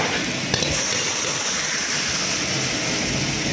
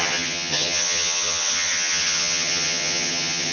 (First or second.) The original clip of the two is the first